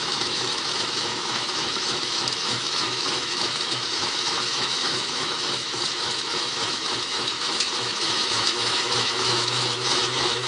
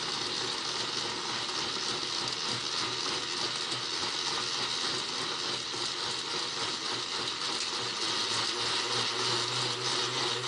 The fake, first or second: first